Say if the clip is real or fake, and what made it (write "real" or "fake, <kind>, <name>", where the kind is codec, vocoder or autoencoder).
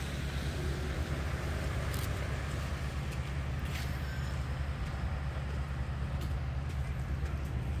real